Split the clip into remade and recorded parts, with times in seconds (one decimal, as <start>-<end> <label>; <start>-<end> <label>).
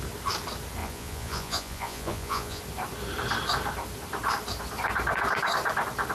0.0-0.8 recorded; 0.8-2.6 remade; 2.6-6.1 recorded